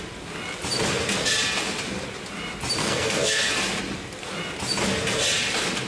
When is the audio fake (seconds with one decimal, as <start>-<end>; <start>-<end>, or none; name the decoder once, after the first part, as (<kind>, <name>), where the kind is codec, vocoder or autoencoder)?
2.8-3.5 (codec, SNAC)